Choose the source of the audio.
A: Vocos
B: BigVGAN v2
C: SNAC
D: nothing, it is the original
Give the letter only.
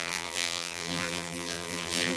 B